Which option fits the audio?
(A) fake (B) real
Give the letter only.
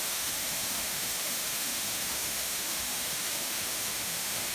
A